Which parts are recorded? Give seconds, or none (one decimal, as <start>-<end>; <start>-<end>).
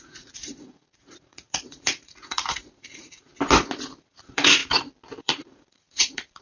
3.3-4.0; 4.6-5.2